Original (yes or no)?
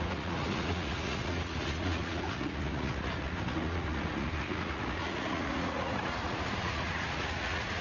no